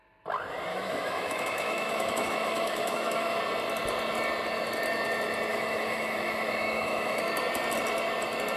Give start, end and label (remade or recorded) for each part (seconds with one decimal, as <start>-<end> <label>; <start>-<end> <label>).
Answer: 0.0-0.7 recorded; 0.7-3.4 remade; 3.4-5.5 recorded; 5.5-7.2 remade; 7.2-8.6 recorded